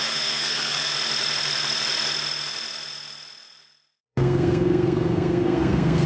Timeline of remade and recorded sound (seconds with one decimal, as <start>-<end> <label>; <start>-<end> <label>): 0.0-0.9 remade; 0.9-4.0 recorded; 4.0-6.1 remade